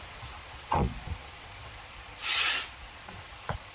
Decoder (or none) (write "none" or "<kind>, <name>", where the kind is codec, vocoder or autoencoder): vocoder, Vocos